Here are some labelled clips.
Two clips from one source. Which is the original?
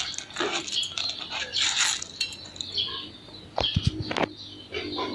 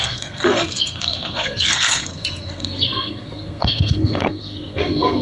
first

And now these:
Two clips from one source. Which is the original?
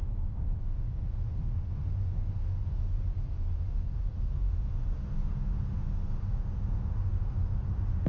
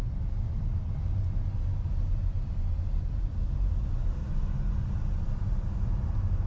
second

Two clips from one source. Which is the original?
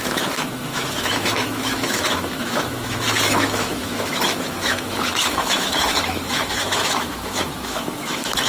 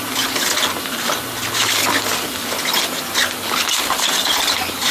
second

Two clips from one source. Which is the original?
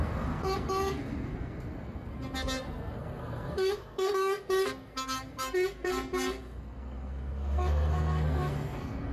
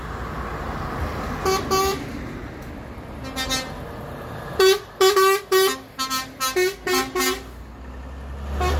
second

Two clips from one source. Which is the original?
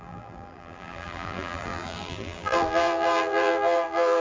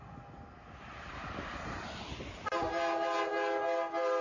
second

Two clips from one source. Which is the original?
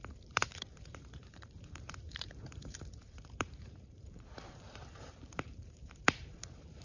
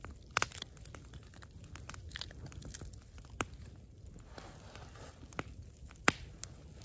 second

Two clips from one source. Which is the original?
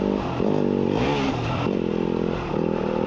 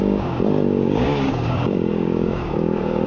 first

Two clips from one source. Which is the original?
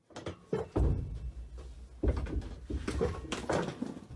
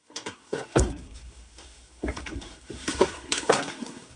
first